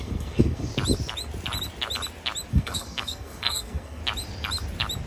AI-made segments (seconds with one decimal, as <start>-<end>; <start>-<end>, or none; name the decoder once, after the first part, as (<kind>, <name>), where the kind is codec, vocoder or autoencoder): 0.0-0.7 (codec, SNAC); 2.5-4.0